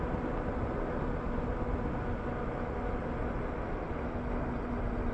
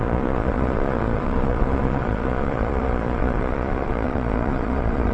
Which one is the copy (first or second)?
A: second